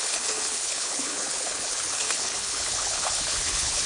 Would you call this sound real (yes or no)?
no